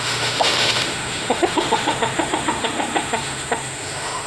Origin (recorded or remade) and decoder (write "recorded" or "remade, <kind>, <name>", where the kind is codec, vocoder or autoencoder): remade, autoencoder, DAC-VAE